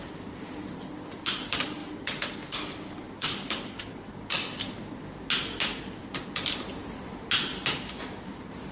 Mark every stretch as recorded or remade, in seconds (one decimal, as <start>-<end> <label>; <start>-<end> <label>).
0.0-8.7 recorded